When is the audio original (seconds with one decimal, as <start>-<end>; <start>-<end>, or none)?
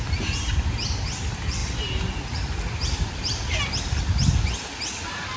0.0-5.4